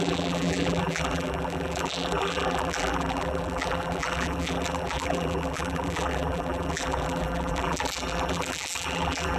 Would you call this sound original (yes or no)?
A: no